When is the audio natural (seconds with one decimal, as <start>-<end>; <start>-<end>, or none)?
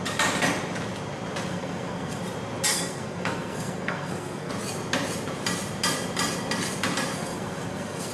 0.0-1.5; 2.2-2.7; 4.5-7.1